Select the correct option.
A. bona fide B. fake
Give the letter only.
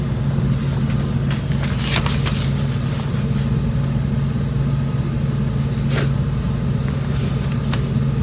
A